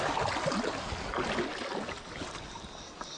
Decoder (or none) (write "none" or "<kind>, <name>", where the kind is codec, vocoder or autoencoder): none